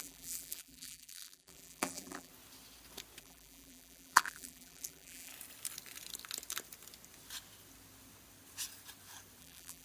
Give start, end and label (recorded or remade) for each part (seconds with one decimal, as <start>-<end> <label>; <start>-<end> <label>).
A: 0.0-2.3 remade; 2.3-3.2 recorded; 3.2-5.3 remade; 5.3-9.4 recorded; 9.4-9.8 remade